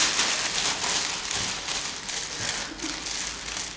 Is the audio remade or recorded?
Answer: recorded